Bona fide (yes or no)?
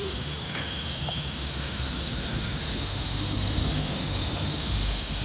no